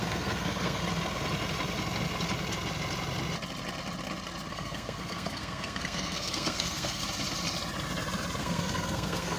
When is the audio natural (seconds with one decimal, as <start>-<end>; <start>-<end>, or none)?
0.8-4.5; 7.0-8.4